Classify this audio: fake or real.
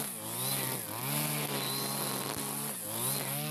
real